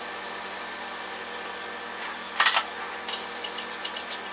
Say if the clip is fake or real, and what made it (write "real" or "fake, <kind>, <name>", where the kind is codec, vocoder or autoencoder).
real